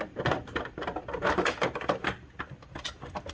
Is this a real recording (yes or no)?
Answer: no